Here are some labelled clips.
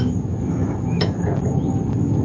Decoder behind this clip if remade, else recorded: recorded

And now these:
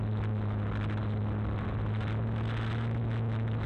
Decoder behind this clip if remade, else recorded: recorded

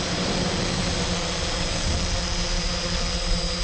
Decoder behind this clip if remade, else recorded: recorded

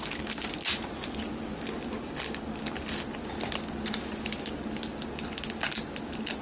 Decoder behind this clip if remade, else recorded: recorded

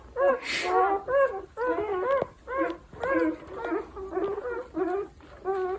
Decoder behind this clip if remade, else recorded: recorded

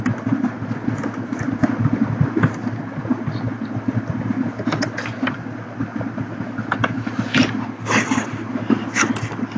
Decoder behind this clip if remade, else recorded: recorded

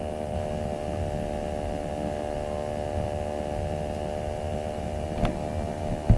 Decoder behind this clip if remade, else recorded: recorded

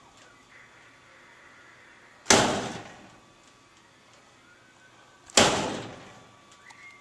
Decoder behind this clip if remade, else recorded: recorded